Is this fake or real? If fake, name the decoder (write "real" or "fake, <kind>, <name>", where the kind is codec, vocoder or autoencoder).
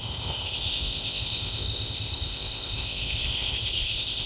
fake, codec, ZipCodec